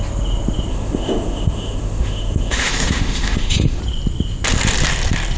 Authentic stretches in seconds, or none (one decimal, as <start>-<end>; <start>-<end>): 0.0-0.7; 3.8-5.4

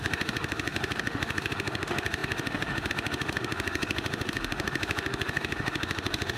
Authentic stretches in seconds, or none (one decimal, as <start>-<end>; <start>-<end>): none

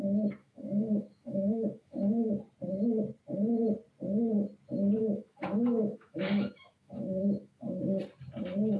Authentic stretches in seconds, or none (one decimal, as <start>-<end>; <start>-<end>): 0.0-0.4; 2.3-5.0; 7.8-8.8

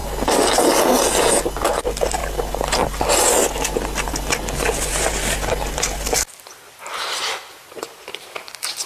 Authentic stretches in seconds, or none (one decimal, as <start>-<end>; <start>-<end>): 0.0-8.9

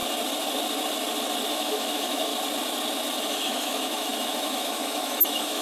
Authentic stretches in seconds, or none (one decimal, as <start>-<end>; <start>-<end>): 0.0-1.5; 2.3-3.2

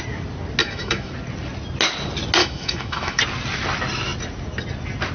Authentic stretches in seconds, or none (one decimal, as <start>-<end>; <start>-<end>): 0.0-0.6; 1.1-2.4; 3.2-5.1

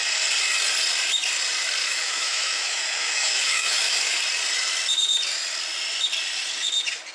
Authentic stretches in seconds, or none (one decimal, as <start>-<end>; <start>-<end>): 0.0-1.8; 4.2-7.1

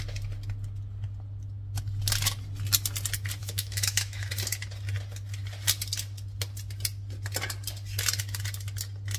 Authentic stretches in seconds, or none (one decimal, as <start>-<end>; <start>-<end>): 0.0-3.4; 4.3-9.2